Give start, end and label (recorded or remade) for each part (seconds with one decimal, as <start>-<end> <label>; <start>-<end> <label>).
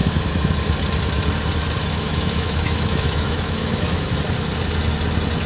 0.0-1.9 recorded; 1.9-4.2 remade; 4.2-5.5 recorded